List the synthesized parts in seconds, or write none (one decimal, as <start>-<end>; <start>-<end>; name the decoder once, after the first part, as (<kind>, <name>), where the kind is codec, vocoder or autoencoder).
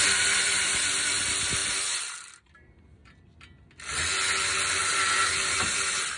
0.0-3.0 (vocoder, BigVGAN v2); 4.8-6.2